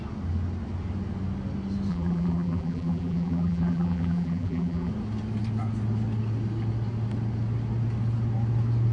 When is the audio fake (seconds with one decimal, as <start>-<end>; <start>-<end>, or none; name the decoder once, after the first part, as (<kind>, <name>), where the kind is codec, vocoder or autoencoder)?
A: 1.9-4.9 (vocoder, BigVGAN v2)